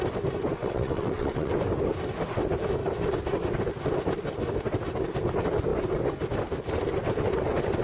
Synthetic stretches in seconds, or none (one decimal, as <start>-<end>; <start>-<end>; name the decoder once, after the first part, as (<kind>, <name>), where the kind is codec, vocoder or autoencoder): 0.6-1.5 (vocoder, WaveNeXt)